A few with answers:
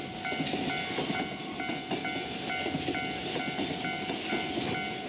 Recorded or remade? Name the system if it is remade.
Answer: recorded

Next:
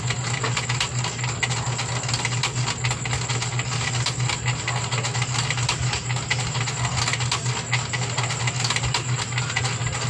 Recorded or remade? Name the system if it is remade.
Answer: recorded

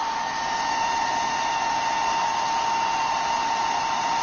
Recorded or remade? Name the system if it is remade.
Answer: remade, vocoder, BigVGAN v2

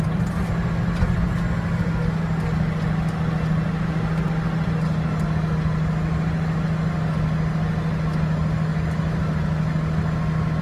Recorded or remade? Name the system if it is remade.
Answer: recorded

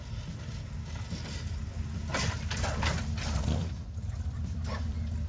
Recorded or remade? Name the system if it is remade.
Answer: remade, vocoder, BigVGAN v2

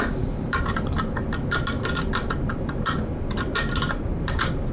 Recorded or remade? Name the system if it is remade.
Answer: remade, vocoder, BigVGAN v2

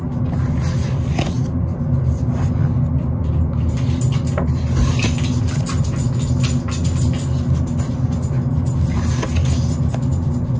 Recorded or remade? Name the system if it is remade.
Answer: recorded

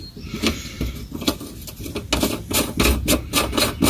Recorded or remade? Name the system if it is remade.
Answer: recorded